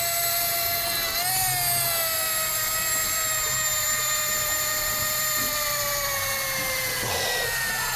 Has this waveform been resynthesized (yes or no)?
no